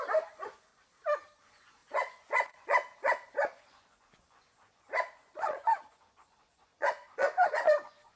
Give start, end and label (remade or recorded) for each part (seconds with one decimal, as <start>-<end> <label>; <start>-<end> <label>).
0.0-0.7 remade; 0.7-1.4 recorded; 1.4-8.2 remade